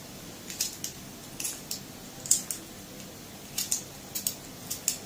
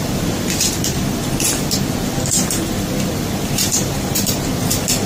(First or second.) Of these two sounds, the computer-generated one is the second